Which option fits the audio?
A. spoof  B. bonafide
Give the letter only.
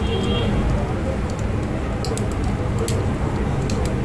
B